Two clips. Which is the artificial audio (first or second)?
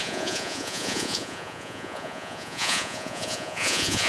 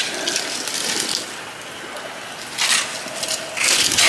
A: first